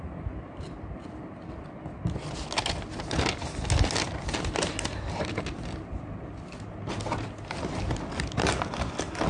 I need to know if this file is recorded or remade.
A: recorded